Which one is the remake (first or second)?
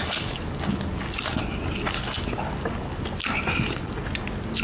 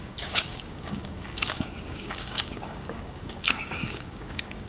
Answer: second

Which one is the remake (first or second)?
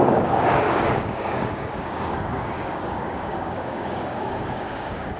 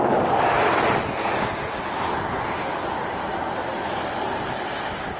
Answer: first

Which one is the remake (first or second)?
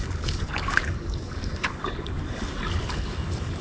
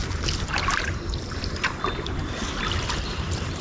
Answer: first